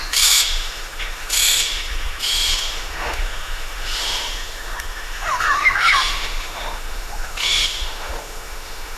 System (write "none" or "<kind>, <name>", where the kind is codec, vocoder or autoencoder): autoencoder, DAC-VAE